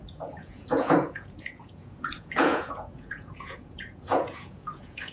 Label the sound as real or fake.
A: fake